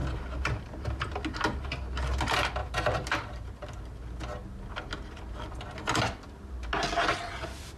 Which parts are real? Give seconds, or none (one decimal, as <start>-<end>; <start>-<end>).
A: 0.0-2.6; 3.8-7.8